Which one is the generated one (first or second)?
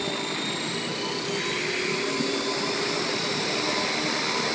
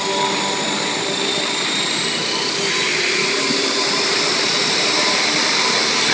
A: second